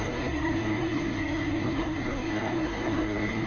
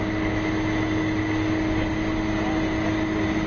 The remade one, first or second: first